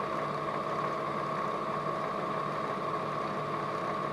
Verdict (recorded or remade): recorded